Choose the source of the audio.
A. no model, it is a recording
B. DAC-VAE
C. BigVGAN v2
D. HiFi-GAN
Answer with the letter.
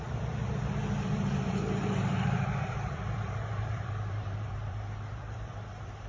C